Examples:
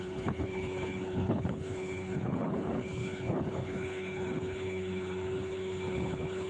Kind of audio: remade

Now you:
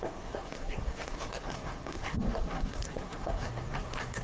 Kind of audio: remade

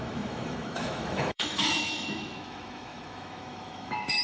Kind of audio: remade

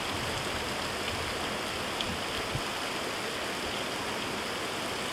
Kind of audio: recorded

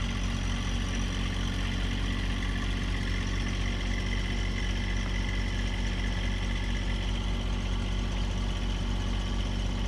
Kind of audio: recorded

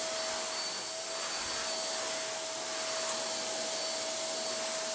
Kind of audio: recorded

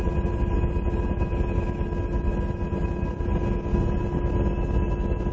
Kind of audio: recorded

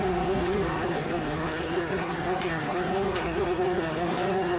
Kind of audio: remade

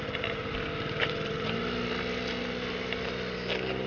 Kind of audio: recorded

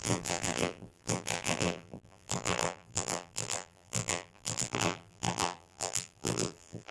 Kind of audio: remade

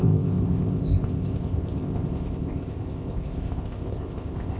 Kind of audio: remade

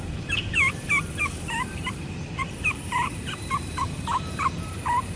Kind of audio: remade